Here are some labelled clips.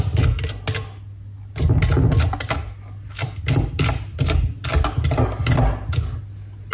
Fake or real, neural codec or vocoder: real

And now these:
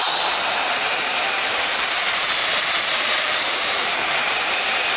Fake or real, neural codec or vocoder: fake, vocoder, BigVGAN v2